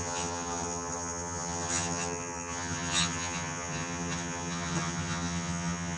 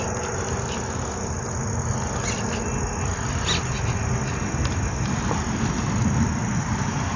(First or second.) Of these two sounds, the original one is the second